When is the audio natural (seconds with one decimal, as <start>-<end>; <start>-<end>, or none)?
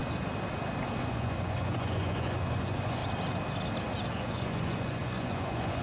0.0-1.0; 3.0-4.1